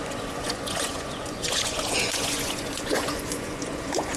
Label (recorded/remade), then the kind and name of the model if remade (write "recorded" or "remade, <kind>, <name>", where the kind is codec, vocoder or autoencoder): remade, vocoder, Vocos